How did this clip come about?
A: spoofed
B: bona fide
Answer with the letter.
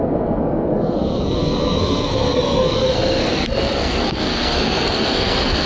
A